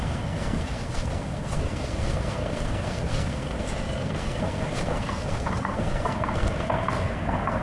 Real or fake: fake